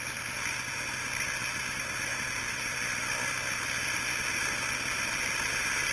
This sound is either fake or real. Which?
real